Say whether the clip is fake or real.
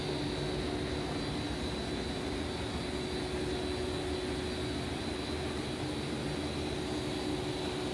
real